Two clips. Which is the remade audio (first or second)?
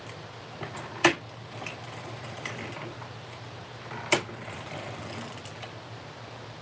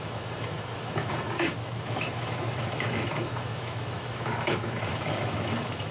second